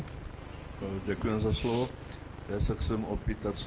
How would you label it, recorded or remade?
recorded